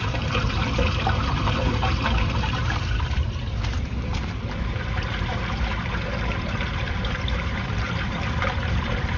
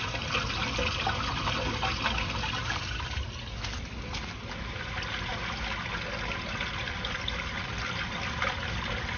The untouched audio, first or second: second